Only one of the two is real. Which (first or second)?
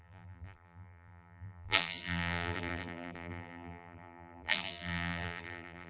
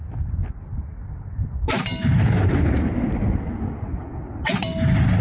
second